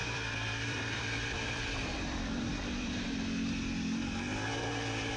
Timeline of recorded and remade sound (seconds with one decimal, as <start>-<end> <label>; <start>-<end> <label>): 0.0-3.1 remade; 3.1-5.2 recorded